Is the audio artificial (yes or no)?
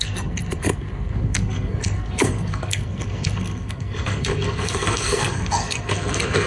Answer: yes